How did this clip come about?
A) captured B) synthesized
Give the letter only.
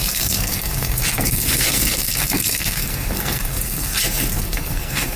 B